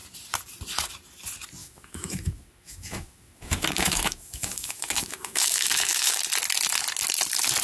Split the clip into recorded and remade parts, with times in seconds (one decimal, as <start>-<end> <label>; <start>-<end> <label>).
0.0-1.6 recorded; 1.6-6.2 remade; 6.2-7.6 recorded